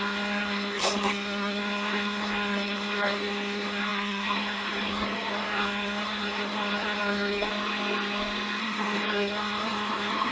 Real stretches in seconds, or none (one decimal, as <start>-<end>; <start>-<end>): 7.5-8.6